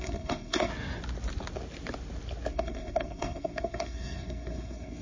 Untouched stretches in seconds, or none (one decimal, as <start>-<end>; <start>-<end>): 0.7-2.5